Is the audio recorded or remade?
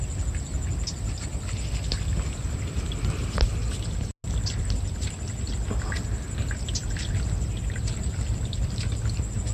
recorded